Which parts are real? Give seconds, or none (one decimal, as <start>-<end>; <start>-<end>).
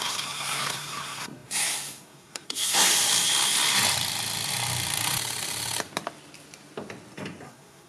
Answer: 2.9-7.5